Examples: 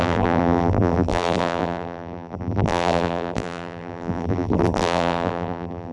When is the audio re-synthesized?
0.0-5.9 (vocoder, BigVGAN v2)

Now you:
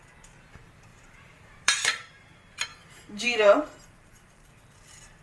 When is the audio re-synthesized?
0.9-2.3 (vocoder, BigVGAN v2); 2.7-4.6